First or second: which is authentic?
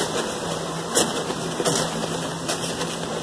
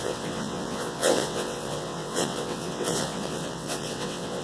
first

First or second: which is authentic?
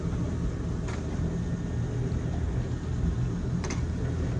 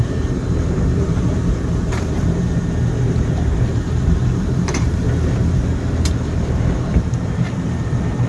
first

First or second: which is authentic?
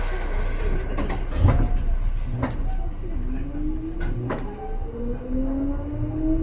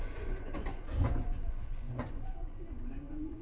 first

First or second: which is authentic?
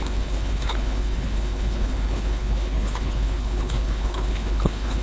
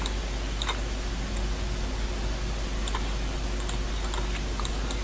second